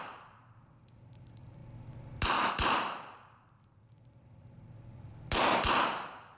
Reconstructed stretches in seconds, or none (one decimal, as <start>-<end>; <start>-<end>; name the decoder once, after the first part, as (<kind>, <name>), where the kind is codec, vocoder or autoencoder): 0.0-1.6 (vocoder, BigVGAN v2); 2.5-5.1; 6.0-6.4

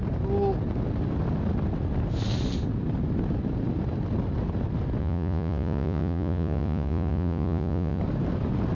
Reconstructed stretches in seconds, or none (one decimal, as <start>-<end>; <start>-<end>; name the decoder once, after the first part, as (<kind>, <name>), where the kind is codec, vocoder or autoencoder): 5.0-8.0 (vocoder, Vocos)

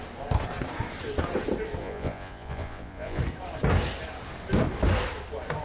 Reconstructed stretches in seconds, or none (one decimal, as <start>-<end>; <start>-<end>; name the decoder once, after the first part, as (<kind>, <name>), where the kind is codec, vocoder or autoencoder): 1.8-3.2 (vocoder, Vocos)

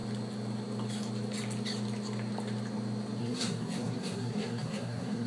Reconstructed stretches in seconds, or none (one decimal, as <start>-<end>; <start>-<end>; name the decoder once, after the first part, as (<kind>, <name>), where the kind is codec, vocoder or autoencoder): 3.2-5.3 (codec, SNAC)

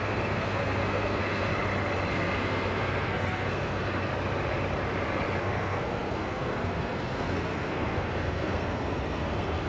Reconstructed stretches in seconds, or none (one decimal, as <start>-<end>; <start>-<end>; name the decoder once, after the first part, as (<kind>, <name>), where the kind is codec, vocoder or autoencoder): 0.0-1.5 (codec, SNAC); 2.1-4.1; 5.4-9.7